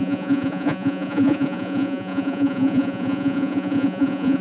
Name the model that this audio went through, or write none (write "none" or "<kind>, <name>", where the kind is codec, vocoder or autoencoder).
vocoder, Vocos